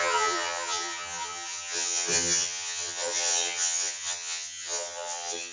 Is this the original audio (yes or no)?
no